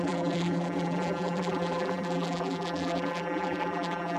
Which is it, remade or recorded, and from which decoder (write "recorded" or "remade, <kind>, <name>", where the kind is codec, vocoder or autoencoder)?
remade, vocoder, BigVGAN v2